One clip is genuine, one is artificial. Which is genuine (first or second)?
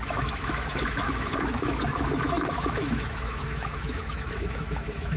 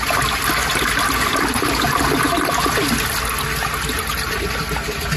second